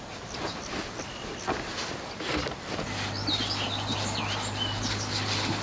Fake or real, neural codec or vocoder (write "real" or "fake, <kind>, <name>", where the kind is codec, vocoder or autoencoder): real